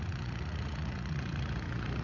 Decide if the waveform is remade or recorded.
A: remade